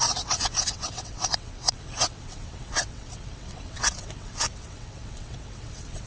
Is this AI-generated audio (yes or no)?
yes